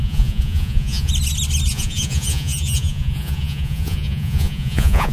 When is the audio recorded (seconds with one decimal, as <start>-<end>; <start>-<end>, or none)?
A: 1.1-1.7